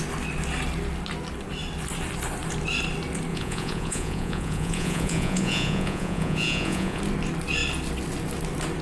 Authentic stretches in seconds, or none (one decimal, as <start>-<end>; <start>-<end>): 0.0-3.3; 7.0-8.8